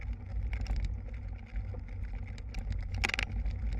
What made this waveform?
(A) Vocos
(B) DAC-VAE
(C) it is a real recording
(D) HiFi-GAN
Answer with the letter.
C